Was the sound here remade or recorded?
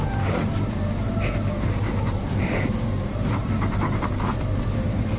remade